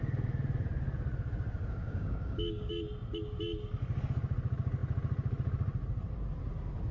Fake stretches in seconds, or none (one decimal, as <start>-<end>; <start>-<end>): 1.8-2.7